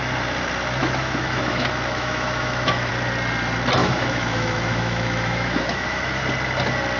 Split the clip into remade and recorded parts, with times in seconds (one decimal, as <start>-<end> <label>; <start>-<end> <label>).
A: 0.0-0.8 recorded; 0.8-2.9 remade; 2.9-3.8 recorded; 3.8-6.2 remade; 6.2-7.0 recorded